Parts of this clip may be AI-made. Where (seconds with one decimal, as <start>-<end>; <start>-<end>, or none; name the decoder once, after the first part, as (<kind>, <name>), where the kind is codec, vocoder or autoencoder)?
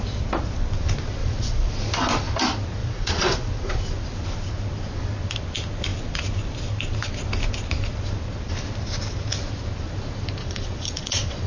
1.2-1.7 (vocoder, Vocos); 2.8-3.8; 10.4-11.5